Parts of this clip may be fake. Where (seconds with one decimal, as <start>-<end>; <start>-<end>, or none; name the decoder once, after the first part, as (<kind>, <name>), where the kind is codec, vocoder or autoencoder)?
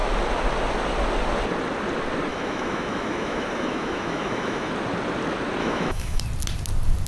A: 2.3-4.7 (autoencoder, DAC-VAE); 5.6-6.2